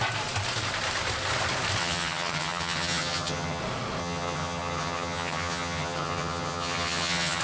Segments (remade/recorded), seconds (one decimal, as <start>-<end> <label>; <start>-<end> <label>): 0.0-1.8 recorded; 1.8-3.6 remade; 3.6-4.0 recorded; 4.0-7.4 remade